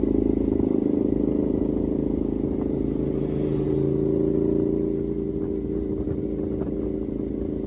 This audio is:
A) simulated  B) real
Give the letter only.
B